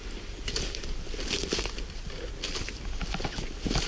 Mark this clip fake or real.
real